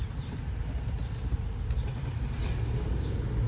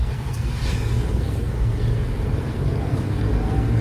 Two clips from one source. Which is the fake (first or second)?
second